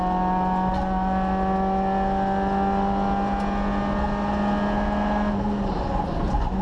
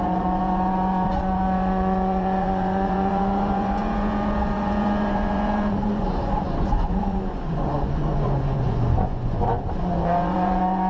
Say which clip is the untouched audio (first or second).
first